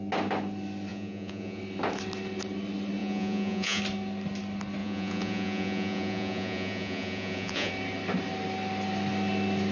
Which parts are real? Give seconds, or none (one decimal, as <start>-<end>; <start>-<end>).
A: 0.0-0.9; 1.6-3.0; 3.8-4.8; 7.7-9.7